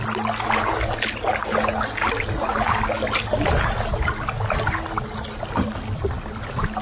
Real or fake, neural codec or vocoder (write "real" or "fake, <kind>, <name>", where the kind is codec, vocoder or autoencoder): real